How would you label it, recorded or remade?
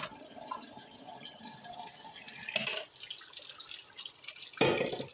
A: recorded